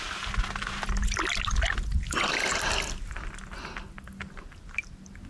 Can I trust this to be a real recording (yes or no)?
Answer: yes